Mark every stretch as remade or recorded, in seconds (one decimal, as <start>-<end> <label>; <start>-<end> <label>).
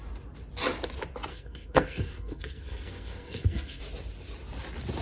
0.0-1.3 recorded; 1.3-3.8 remade; 3.8-5.0 recorded